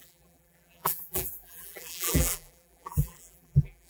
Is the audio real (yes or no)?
no